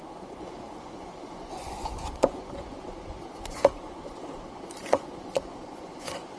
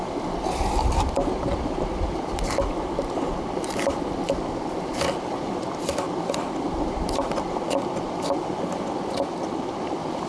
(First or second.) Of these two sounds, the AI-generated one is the first